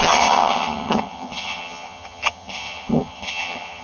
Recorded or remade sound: remade